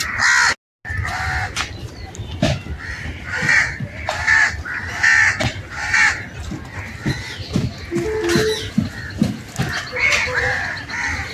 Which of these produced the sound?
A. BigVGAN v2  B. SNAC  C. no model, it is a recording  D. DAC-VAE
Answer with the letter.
C